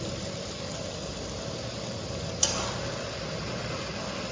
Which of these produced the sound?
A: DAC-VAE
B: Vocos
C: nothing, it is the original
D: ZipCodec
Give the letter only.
C